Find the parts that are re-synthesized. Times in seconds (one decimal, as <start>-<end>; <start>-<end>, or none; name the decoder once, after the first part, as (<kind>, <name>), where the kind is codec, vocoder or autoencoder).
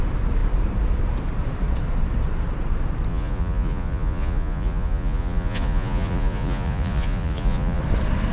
3.1-7.8 (vocoder, Vocos)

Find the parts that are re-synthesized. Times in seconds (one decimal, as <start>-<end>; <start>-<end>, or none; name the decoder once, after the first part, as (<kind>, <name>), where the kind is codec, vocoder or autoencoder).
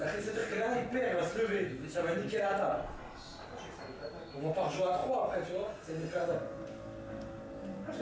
none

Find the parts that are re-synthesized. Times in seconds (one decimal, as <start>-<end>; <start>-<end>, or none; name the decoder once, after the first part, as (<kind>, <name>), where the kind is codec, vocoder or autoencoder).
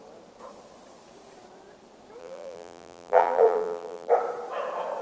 2.2-4.1 (vocoder, BigVGAN v2)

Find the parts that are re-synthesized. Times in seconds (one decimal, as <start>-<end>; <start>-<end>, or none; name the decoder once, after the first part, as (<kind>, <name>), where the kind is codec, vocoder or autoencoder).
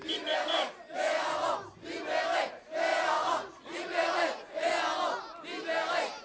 0.9-1.5 (vocoder, Vocos); 2.9-4.7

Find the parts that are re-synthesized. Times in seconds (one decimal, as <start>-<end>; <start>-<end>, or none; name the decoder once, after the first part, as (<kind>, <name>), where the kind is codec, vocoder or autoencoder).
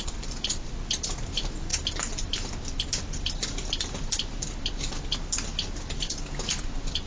0.0-1.7 (vocoder, BigVGAN v2); 6.0-7.1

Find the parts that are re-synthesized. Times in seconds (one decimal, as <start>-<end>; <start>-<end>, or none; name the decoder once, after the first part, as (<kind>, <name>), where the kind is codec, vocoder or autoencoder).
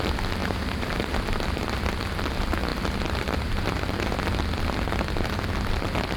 0.4-1.1 (vocoder, BigVGAN v2)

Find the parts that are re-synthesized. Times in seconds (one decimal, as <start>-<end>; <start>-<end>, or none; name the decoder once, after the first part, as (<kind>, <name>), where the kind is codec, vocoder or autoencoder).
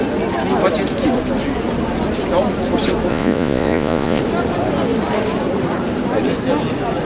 3.1-4.2 (vocoder, Vocos)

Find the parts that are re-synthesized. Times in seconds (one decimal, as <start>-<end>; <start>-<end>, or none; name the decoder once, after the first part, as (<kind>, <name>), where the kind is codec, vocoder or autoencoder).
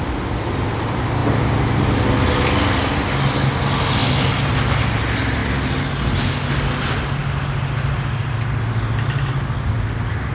none